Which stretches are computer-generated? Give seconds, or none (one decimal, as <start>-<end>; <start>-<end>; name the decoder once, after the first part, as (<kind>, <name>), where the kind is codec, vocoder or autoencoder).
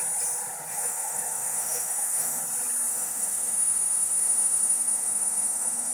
0.7-2.4 (autoencoder, DAC-VAE); 2.9-5.9